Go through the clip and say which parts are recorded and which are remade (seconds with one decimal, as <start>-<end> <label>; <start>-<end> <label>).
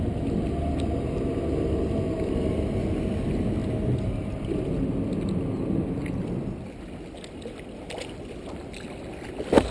0.0-9.7 recorded